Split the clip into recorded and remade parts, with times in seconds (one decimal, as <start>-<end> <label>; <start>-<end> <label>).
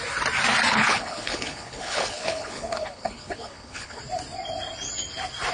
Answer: 0.0-0.7 recorded; 0.7-4.0 remade; 4.0-5.5 recorded